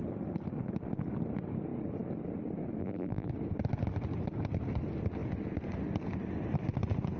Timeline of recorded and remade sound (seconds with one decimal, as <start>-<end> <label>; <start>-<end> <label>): 0.0-2.8 recorded; 2.8-3.3 remade; 3.3-7.2 recorded